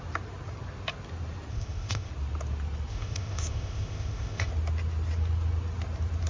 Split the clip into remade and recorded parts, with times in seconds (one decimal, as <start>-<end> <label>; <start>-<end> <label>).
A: 0.0-1.5 recorded; 1.5-2.1 remade; 2.1-2.9 recorded; 2.9-4.5 remade; 4.5-6.3 recorded